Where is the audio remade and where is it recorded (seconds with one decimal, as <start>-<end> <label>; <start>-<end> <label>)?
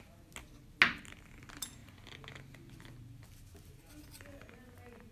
0.0-5.1 recorded